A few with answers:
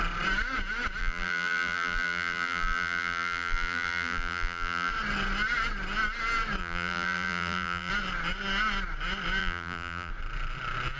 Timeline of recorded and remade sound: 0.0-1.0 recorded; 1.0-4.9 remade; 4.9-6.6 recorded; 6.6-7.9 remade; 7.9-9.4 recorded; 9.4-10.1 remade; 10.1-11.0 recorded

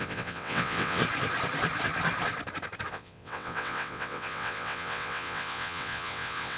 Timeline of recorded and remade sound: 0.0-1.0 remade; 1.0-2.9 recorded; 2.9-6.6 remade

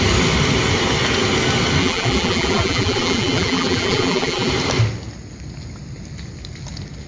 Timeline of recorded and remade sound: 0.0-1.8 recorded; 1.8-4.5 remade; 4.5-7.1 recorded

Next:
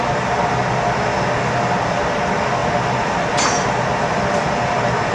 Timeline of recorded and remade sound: 0.0-5.1 recorded

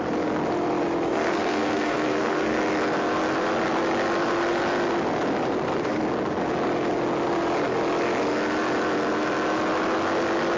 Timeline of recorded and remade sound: 0.0-1.1 recorded; 1.1-2.6 remade; 2.6-10.6 recorded